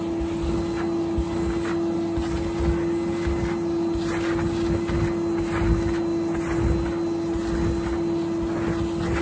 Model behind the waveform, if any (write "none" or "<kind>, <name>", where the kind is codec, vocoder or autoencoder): none